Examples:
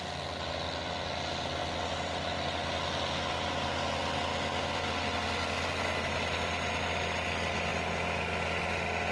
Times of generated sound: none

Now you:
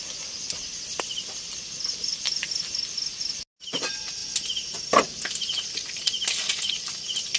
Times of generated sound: 3.8-4.2 (vocoder, BigVGAN v2); 5.0-7.4